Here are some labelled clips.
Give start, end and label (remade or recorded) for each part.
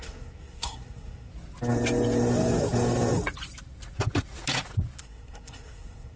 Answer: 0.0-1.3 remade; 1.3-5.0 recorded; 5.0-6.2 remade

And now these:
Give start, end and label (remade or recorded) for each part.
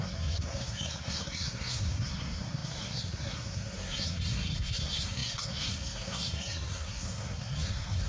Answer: 0.0-8.1 remade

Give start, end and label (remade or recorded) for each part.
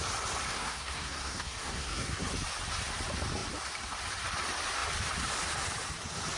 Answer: 0.0-0.5 recorded; 0.5-2.3 remade; 2.3-6.4 recorded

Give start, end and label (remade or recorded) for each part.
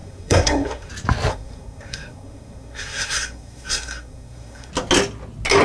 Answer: 0.0-0.9 remade; 0.9-1.3 recorded; 1.3-4.7 remade; 4.7-5.6 recorded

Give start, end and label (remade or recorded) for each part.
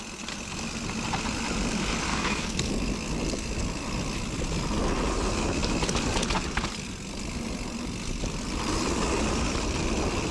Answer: 0.0-2.1 recorded; 2.1-2.7 remade; 2.7-10.3 recorded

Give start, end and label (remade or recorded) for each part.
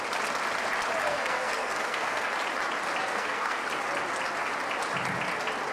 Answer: 0.0-1.0 recorded; 1.0-2.3 remade; 2.3-3.0 recorded; 3.0-3.6 remade; 3.6-5.7 recorded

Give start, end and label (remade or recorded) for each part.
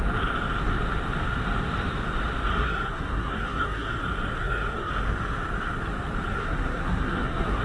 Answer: 0.0-2.5 recorded; 2.5-4.0 remade; 4.0-4.4 recorded; 4.4-4.9 remade; 4.9-6.3 recorded; 6.3-7.6 remade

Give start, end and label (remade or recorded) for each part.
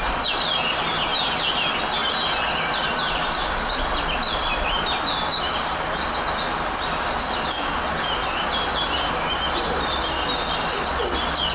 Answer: 0.0-11.5 recorded